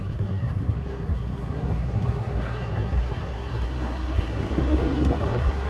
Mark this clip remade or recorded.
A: remade